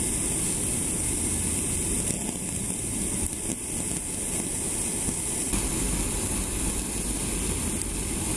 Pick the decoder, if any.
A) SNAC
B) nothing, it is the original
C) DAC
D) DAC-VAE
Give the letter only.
B